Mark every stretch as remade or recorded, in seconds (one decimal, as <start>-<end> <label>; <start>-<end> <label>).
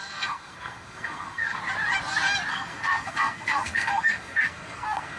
0.0-1.6 remade; 1.6-2.5 recorded; 2.5-5.2 remade